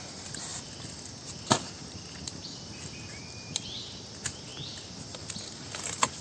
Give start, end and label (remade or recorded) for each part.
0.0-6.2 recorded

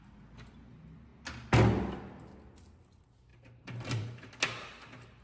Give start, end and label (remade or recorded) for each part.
0.0-3.3 recorded; 3.3-4.3 remade; 4.3-5.2 recorded